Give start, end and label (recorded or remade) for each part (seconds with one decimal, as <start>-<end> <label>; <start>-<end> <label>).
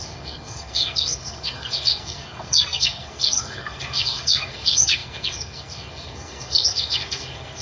0.0-7.6 remade